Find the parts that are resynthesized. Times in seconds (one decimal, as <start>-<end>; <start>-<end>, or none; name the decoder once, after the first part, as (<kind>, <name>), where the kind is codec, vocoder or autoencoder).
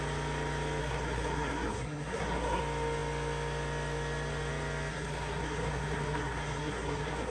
0.8-2.6 (codec, SNAC); 4.9-7.3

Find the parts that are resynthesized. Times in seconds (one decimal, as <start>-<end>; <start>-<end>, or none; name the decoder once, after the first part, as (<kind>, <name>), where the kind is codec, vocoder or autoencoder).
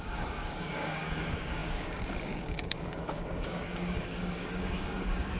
0.0-5.4 (codec, DAC)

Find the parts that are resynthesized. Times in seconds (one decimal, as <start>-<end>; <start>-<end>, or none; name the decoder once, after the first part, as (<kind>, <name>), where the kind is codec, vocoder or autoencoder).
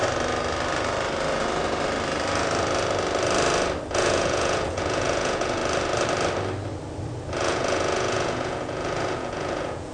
3.9-5.6 (vocoder, Vocos); 7.4-9.9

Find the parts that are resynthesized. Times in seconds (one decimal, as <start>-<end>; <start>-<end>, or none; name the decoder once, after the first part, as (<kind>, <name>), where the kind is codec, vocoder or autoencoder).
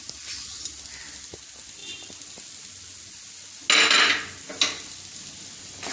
4.5-5.9 (vocoder, BigVGAN v2)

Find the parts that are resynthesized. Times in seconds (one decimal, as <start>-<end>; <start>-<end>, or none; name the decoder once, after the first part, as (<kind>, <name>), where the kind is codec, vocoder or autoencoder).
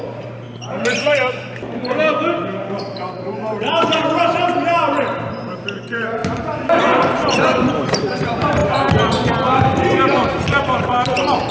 0.0-6.2 (vocoder, BigVGAN v2); 6.8-8.6; 10.8-11.5